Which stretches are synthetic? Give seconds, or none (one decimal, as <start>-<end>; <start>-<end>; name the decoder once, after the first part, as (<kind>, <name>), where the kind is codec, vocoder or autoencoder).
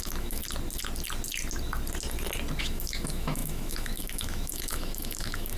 0.0-0.4 (autoencoder, DAC-VAE); 2.6-5.6